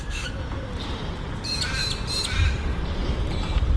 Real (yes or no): yes